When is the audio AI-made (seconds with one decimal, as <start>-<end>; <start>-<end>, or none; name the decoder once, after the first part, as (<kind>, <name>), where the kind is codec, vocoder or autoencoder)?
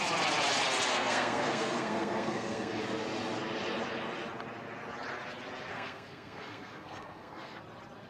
0.9-2.8 (codec, SNAC); 5.7-7.6